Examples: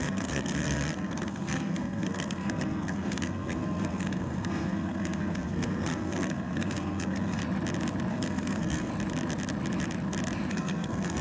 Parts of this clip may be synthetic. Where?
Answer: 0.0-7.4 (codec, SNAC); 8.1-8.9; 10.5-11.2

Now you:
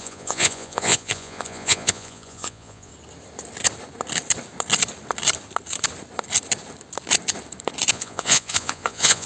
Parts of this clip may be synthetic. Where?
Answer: 0.0-2.9 (vocoder, Vocos); 7.9-9.3